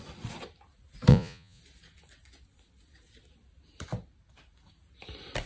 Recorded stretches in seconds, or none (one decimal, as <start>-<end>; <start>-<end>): 0.0-1.1; 1.6-5.5